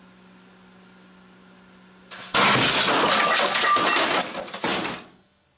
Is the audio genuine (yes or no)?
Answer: yes